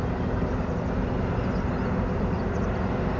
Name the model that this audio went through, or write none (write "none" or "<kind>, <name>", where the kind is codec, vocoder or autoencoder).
none